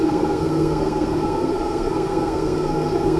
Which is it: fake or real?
fake